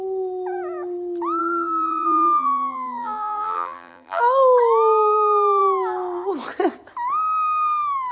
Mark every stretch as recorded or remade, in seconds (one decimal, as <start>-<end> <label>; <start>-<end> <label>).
0.0-1.4 recorded; 1.4-4.2 remade; 4.2-8.1 recorded

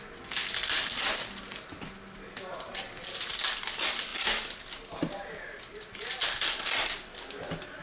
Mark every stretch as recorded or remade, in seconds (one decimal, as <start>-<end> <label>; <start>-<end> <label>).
0.0-7.8 recorded

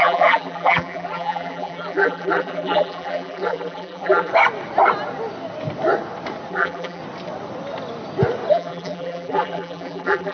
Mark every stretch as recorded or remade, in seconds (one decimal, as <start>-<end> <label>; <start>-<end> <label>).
0.0-4.3 remade; 4.3-6.5 recorded; 6.5-7.0 remade; 7.0-8.5 recorded; 8.5-10.3 remade

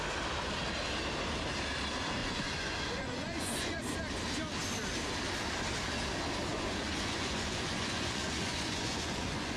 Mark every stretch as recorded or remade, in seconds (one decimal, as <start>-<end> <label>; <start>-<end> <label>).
0.0-2.2 recorded; 2.2-3.8 remade; 3.8-6.5 recorded; 6.5-9.6 remade

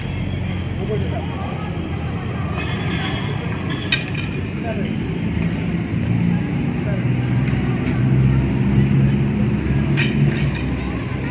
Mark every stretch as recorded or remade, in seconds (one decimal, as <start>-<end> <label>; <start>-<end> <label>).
0.0-11.3 recorded